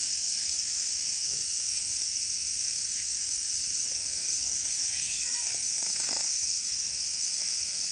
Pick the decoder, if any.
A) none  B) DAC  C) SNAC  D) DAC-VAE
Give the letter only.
C